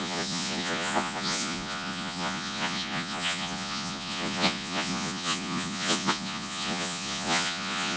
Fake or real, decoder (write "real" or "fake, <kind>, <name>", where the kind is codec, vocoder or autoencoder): fake, vocoder, Vocos